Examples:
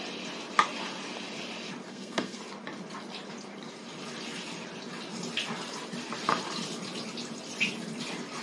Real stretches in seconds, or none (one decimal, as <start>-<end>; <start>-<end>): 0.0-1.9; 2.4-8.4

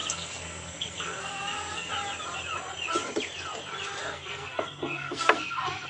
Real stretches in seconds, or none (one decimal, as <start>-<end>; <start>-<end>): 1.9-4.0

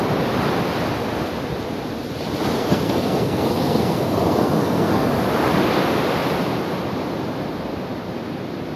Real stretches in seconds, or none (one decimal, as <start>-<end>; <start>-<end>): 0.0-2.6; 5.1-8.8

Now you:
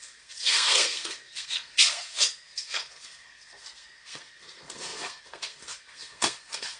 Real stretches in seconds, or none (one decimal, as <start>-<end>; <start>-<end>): none

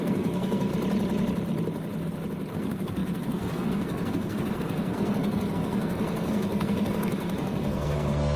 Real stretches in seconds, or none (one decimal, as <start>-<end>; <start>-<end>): 0.7-2.5

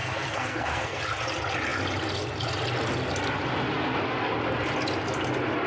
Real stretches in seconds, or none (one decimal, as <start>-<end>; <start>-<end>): 1.0-5.7

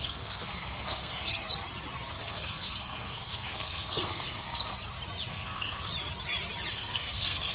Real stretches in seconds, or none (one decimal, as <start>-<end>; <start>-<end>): 1.3-2.2; 4.7-5.3; 5.9-6.7

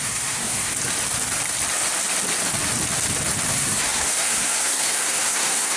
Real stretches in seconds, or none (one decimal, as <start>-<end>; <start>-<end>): 0.7-3.5